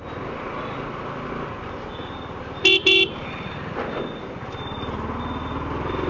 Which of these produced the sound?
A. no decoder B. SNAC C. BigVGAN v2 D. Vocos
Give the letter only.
A